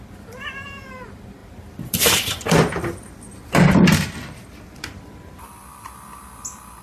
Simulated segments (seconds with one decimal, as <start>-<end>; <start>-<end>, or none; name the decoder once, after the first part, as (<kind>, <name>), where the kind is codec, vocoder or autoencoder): 1.4-5.5 (vocoder, BigVGAN v2)

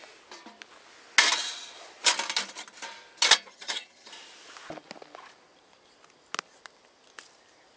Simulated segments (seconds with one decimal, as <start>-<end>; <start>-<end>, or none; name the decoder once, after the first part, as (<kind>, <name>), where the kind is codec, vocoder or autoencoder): 3.5-4.1 (vocoder, HiFi-GAN)

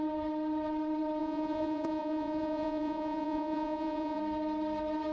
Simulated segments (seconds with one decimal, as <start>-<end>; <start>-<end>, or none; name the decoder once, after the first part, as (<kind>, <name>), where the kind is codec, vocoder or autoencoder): 1.2-4.2 (vocoder, Vocos)